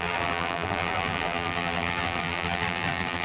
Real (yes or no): no